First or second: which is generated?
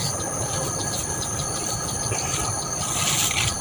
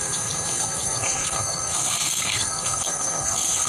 second